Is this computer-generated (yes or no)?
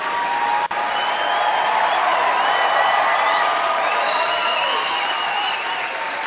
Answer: yes